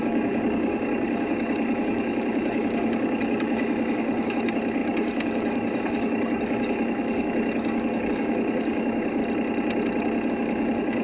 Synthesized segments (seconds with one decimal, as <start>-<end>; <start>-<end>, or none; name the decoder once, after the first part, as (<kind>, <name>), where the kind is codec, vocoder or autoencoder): 0.0-9.2 (codec, DAC); 10.3-11.0